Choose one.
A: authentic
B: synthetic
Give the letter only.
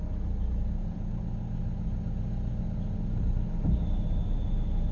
A